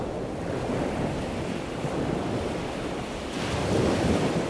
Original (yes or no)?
yes